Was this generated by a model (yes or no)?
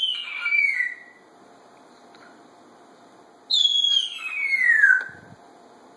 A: no